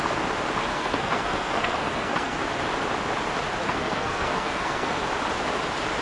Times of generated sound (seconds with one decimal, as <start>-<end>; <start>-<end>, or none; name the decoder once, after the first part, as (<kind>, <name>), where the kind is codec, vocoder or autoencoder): 0.7-2.4 (codec, SNAC); 3.6-4.9